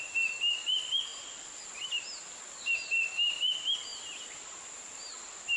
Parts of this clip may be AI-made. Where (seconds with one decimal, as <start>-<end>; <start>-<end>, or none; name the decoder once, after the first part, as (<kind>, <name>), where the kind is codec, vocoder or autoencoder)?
none